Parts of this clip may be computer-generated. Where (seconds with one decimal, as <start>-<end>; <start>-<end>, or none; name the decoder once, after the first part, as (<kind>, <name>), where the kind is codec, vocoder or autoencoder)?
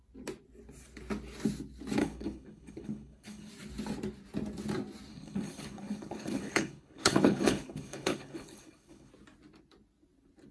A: 2.0-3.5 (codec, HILCodec); 5.1-9.1